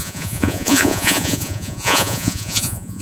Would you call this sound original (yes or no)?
no